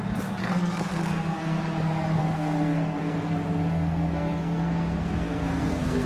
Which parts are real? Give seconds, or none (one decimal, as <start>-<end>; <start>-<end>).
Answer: 0.0-0.4; 1.6-2.2